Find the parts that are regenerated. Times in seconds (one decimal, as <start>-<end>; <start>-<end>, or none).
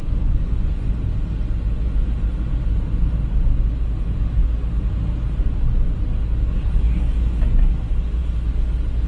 0.0-0.9